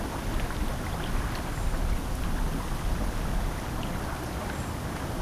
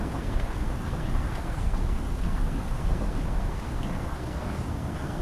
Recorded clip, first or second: first